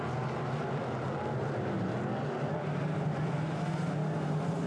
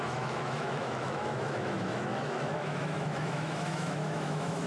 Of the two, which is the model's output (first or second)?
second